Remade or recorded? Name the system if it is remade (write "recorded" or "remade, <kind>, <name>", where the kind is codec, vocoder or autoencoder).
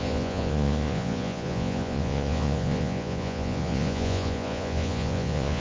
remade, vocoder, Vocos